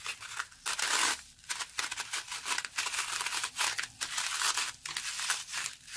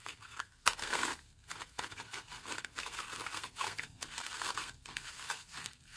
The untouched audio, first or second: first